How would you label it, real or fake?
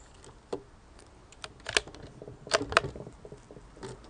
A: real